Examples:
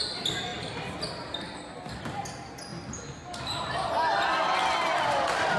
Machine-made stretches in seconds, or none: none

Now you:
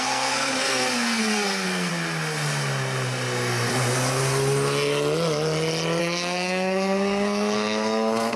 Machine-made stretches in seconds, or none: 0.0-1.9; 6.0-8.4

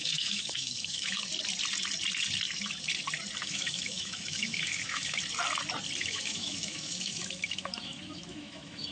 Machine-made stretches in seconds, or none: 0.0-1.2; 3.4-5.2; 6.0-8.9

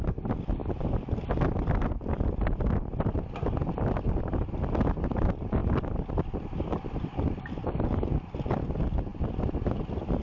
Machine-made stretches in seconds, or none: 5.6-8.6

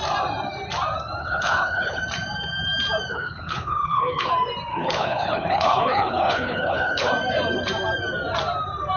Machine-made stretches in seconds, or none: 1.2-2.0; 3.1-4.3; 4.7-7.1

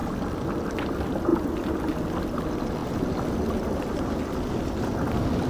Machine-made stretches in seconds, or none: 1.3-2.0

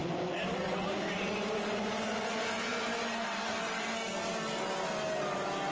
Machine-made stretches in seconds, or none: none

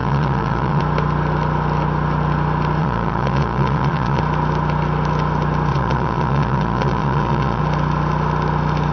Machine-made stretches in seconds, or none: 0.0-0.8; 2.8-4.2; 5.7-7.6